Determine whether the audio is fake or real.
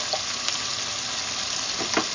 real